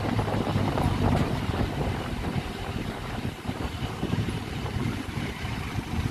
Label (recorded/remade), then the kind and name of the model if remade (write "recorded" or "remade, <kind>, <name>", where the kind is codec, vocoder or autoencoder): remade, vocoder, BigVGAN v2